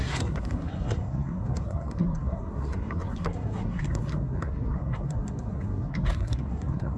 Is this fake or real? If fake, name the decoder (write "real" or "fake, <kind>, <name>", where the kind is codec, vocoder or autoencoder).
fake, codec, SNAC